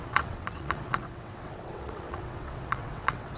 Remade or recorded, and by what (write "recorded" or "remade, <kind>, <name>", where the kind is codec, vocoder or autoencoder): remade, vocoder, WaveNeXt